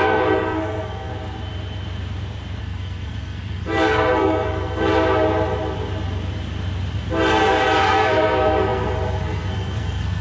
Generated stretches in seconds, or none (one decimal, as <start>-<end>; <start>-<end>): 0.0-1.1; 2.6-4.9; 7.3-10.2

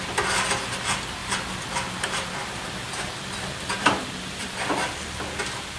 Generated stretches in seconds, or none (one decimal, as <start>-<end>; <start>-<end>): 1.2-4.7